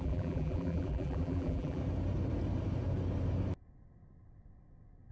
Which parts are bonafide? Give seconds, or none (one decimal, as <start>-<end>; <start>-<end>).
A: 1.8-5.1

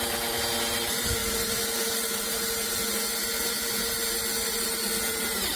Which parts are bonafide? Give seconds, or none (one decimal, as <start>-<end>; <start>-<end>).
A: 0.0-5.6

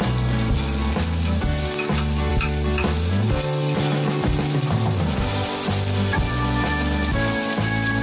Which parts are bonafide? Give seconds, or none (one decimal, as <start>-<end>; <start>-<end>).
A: 0.0-8.0